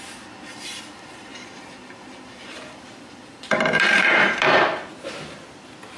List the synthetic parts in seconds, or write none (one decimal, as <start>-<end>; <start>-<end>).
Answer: 1.3-4.1